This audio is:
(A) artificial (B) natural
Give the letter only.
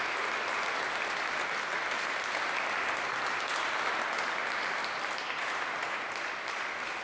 B